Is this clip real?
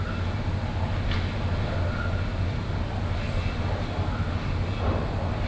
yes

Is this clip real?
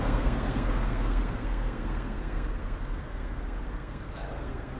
no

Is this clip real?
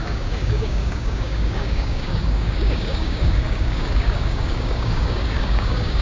no